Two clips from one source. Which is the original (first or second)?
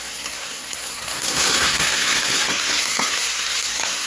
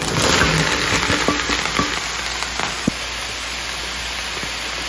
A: second